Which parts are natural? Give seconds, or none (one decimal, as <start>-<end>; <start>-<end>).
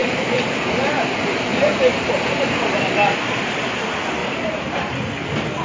1.1-1.5; 2.1-4.2; 4.7-5.6